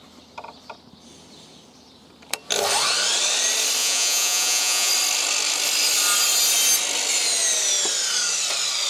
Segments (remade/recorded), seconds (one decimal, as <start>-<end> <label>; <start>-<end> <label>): 0.0-3.8 recorded; 3.8-4.9 remade; 4.9-8.9 recorded